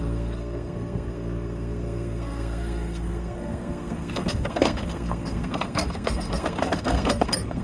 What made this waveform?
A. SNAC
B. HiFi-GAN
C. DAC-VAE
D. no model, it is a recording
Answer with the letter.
A